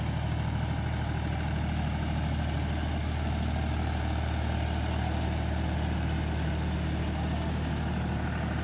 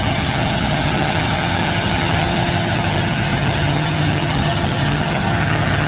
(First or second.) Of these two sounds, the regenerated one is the second